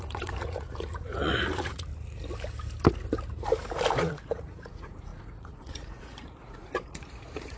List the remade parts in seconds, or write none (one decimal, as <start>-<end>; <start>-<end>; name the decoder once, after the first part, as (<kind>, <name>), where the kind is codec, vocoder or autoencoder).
0.0-1.9 (vocoder, Vocos); 4.0-7.6